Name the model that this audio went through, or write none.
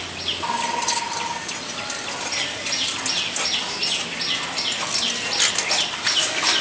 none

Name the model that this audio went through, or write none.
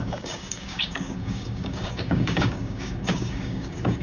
codec, DAC